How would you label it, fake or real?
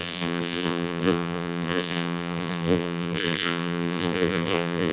fake